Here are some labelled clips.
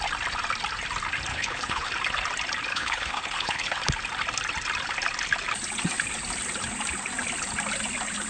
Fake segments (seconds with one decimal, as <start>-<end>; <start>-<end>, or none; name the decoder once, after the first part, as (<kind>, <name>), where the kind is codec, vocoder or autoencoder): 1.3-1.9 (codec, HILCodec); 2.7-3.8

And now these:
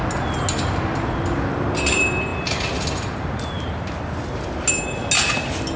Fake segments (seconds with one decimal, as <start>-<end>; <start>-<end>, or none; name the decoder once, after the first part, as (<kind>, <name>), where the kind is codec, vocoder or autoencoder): none

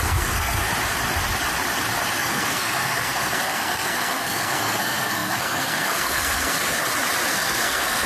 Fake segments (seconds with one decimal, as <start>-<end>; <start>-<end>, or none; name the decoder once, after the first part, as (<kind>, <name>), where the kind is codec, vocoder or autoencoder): 0.0-0.7 (codec, SNAC); 2.2-6.8; 7.3-8.1

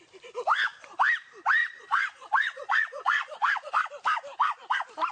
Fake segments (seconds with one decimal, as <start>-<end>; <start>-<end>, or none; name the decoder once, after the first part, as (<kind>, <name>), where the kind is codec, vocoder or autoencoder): 1.6-3.7 (vocoder, Vocos)

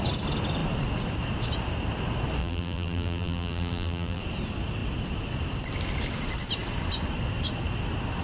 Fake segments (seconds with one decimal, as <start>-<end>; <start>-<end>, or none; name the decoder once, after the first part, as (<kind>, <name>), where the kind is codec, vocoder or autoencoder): 2.4-4.2 (vocoder, BigVGAN v2)

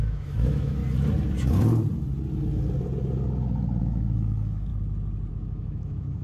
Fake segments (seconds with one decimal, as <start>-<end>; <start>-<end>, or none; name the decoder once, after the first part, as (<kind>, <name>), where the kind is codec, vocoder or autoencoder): 0.0-0.8 (autoencoder, DAC-VAE); 3.8-4.7; 5.3-6.2

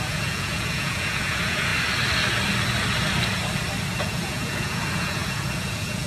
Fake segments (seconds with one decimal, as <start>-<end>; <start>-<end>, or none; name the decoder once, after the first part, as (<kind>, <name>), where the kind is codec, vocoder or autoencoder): 0.0-1.7 (vocoder, Vocos); 4.0-6.1